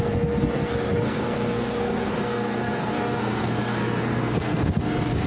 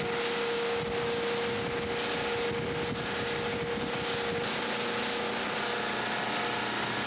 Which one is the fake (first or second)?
first